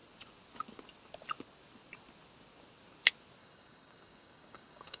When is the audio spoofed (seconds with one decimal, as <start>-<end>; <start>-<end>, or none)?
3.4-5.0